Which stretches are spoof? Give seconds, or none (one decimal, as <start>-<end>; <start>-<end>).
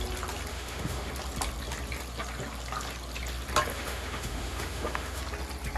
0.5-1.1; 3.7-5.2